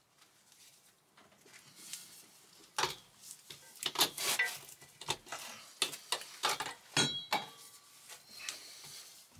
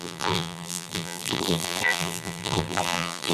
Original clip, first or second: first